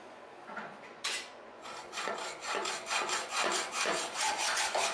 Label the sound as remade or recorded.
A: remade